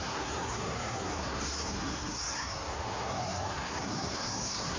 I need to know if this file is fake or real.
fake